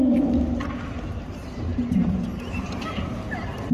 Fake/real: real